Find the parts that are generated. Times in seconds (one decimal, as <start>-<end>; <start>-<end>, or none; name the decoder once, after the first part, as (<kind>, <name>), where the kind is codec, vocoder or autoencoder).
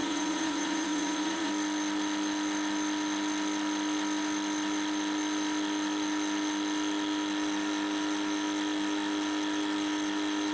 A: 0.0-1.5 (vocoder, Vocos)